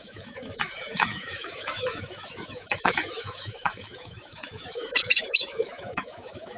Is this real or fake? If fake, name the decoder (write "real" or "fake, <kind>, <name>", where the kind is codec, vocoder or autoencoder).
fake, autoencoder, DAC-VAE